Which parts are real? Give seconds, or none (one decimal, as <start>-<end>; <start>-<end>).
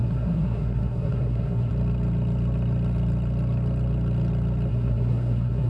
1.7-4.7